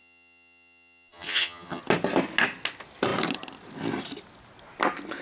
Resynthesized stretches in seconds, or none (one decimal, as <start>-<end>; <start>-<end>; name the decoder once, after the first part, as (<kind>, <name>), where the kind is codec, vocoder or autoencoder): 0.0-1.8 (vocoder, HiFi-GAN)